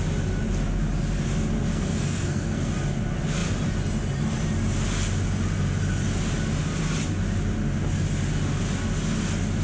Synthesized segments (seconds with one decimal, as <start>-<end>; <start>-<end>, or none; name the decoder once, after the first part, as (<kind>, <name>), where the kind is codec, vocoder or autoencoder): 1.7-2.7 (codec, SNAC)